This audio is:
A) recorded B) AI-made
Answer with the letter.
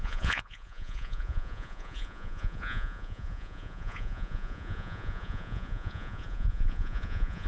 B